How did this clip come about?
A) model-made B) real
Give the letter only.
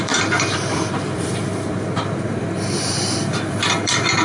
A